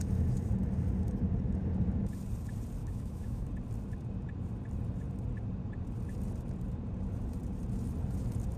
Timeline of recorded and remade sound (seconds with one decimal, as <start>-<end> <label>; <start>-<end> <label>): 0.0-2.8 recorded; 2.8-3.5 remade; 3.5-8.6 recorded